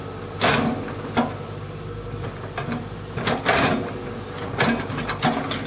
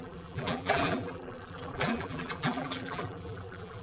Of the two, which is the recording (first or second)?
first